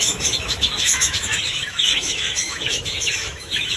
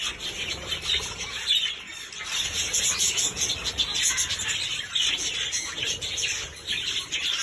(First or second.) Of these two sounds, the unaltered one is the second